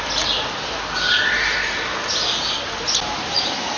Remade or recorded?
recorded